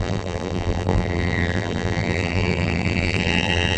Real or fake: fake